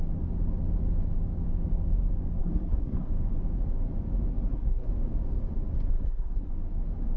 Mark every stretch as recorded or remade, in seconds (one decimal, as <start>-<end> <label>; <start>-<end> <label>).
0.0-2.4 recorded; 2.4-3.1 remade; 3.1-4.3 recorded; 4.3-4.9 remade; 4.9-5.9 recorded; 5.9-6.5 remade; 6.5-7.2 recorded